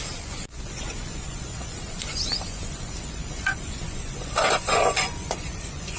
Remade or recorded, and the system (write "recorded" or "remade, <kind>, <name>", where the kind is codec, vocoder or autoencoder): remade, vocoder, Vocos